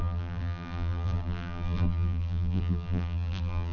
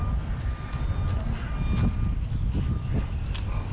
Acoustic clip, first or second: second